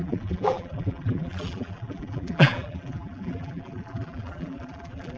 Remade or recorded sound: remade